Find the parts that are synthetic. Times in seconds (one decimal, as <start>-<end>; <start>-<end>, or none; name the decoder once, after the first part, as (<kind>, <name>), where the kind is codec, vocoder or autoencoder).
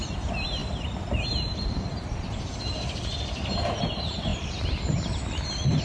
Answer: 0.6-3.7 (vocoder, BigVGAN v2); 4.3-5.8